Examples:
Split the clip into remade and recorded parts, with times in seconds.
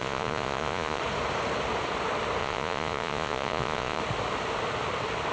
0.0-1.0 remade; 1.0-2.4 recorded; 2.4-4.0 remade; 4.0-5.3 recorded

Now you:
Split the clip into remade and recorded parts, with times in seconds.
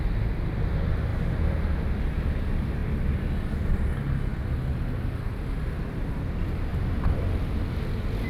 0.0-8.3 recorded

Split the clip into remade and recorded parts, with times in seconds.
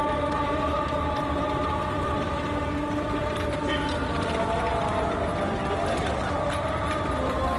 0.0-7.6 recorded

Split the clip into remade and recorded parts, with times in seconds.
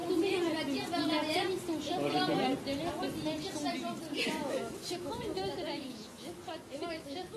0.0-4.4 recorded; 4.4-7.4 remade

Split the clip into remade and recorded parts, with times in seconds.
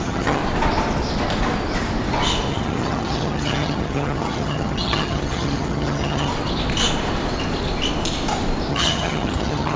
0.0-0.4 remade; 0.4-2.5 recorded; 2.5-6.3 remade; 6.3-8.7 recorded; 8.7-9.8 remade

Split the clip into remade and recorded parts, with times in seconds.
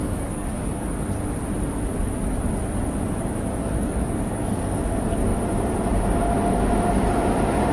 0.0-0.9 remade; 0.9-3.6 recorded; 3.6-4.7 remade; 4.7-7.7 recorded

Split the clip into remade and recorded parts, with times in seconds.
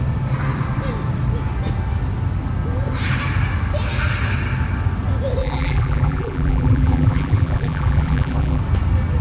0.0-5.4 recorded; 5.4-8.6 remade; 8.6-9.2 recorded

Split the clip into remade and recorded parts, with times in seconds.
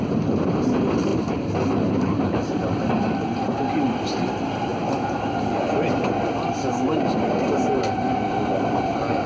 0.0-1.1 recorded; 1.1-2.9 remade; 2.9-9.3 recorded